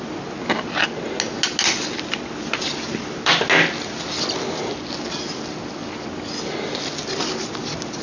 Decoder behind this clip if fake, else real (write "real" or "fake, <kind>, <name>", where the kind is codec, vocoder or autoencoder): real